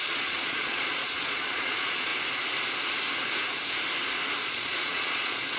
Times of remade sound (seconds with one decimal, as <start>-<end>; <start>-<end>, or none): 0.0-2.1; 4.5-5.6